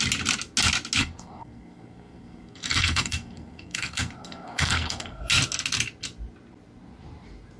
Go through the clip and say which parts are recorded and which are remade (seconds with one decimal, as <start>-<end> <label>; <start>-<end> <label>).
0.0-1.0 recorded; 1.0-5.3 remade; 5.3-7.6 recorded